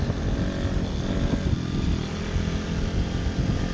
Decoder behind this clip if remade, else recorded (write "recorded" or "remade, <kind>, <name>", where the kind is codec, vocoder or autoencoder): recorded